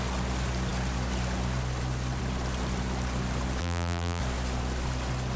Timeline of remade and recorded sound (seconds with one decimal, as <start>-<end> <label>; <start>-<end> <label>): 0.0-3.6 recorded; 3.6-4.2 remade; 4.2-5.4 recorded